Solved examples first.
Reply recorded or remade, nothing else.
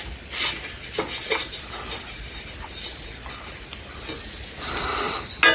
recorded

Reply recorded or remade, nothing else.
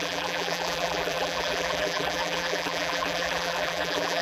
remade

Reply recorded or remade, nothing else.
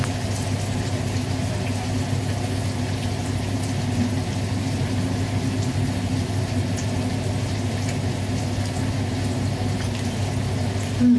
recorded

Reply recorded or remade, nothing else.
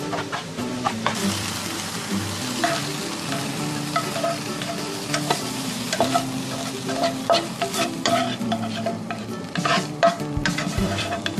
remade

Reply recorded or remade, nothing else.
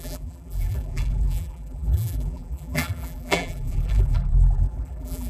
remade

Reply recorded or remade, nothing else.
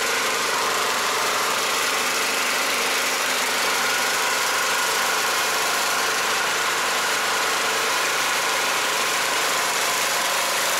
remade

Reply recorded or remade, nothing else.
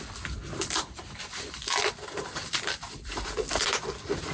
remade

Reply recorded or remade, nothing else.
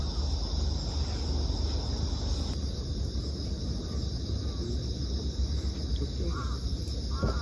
recorded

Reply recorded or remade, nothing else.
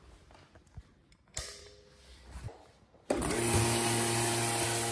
recorded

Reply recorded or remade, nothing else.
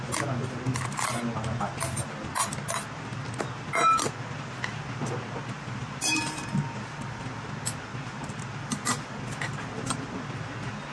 recorded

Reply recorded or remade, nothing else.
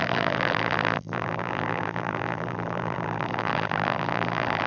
remade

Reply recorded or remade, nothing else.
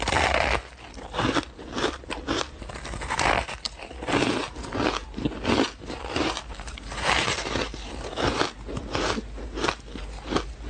recorded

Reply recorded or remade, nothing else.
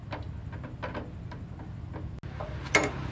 recorded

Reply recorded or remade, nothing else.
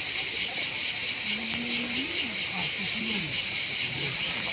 remade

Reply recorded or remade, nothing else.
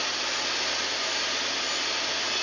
remade